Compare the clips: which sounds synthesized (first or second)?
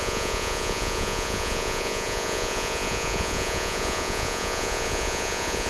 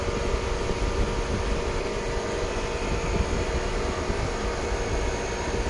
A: first